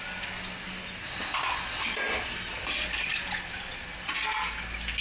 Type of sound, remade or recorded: recorded